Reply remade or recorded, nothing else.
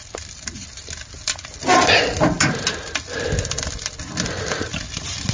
recorded